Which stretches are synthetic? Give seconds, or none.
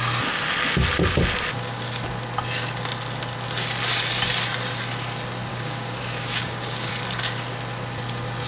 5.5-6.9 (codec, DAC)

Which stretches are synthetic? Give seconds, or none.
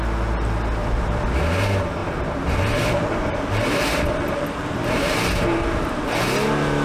0.8-1.4 (vocoder, BigVGAN v2); 2.0-6.1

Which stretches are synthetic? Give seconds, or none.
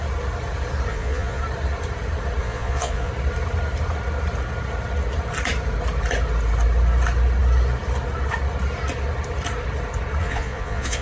0.9-1.4 (vocoder, Vocos); 2.4-3.1; 10.2-11.0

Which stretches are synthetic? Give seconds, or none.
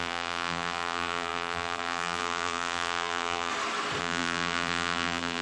0.0-3.5 (vocoder, BigVGAN v2); 4.0-5.4